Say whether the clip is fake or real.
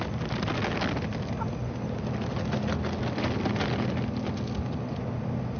real